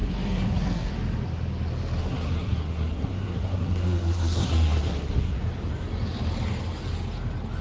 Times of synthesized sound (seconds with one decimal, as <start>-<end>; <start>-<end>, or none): 0.0-0.9; 2.0-5.5